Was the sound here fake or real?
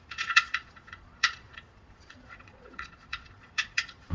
fake